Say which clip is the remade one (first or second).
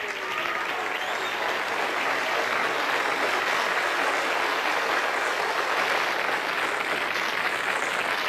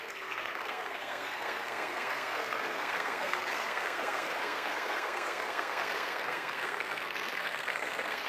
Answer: second